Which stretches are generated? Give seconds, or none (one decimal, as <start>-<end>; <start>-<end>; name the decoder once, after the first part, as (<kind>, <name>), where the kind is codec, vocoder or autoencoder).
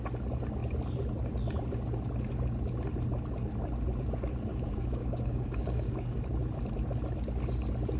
4.5-6.2 (codec, DAC)